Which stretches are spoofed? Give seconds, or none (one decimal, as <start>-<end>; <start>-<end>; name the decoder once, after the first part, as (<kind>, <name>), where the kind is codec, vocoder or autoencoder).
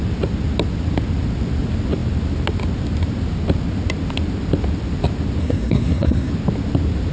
5.4-6.3 (codec, SNAC)